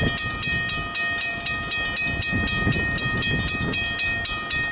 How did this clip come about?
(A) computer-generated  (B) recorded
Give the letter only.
B